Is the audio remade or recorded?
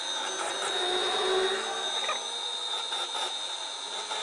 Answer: recorded